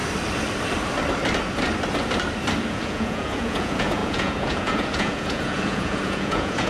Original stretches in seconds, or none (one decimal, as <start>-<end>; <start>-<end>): 0.0-2.7